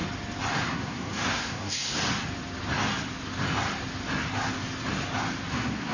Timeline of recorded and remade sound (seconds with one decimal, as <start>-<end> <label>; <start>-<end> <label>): 0.0-0.6 recorded; 0.6-2.0 remade; 2.0-5.5 recorded; 5.5-5.9 remade